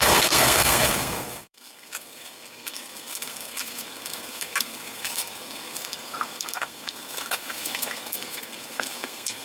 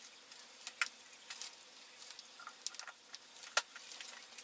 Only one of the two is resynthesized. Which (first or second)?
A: first